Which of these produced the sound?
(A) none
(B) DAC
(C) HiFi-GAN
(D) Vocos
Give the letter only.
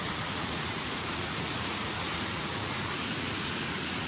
D